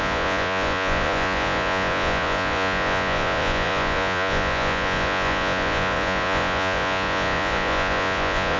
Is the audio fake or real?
fake